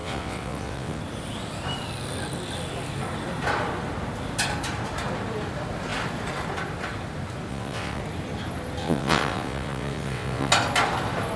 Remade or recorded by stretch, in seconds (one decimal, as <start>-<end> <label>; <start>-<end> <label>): 0.0-1.0 remade; 1.0-7.5 recorded; 7.5-8.0 remade; 8.0-8.8 recorded; 8.8-10.5 remade; 10.5-11.4 recorded